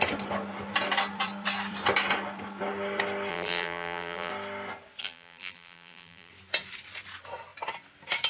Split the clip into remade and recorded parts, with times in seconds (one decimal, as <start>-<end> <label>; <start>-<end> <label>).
0.0-3.3 recorded; 3.3-4.3 remade; 4.3-5.0 recorded; 5.0-6.3 remade; 6.3-8.3 recorded